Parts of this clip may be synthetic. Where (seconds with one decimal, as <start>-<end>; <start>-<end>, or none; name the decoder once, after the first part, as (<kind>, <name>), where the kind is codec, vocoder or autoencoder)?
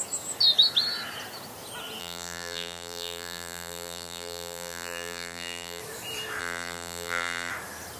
2.0-5.8 (vocoder, BigVGAN v2); 6.4-7.5